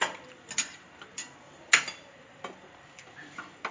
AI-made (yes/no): no